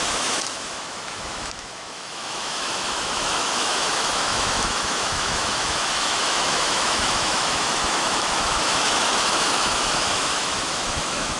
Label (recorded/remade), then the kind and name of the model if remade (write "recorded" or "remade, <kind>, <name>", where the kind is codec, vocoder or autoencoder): remade, autoencoder, DAC-VAE